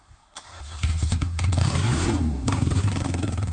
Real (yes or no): no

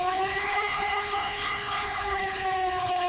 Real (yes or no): no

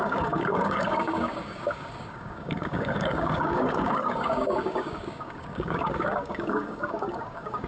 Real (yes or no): no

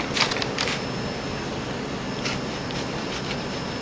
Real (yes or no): yes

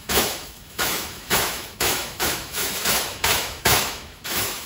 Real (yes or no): no